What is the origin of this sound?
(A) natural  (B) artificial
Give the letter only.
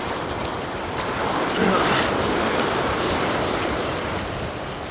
A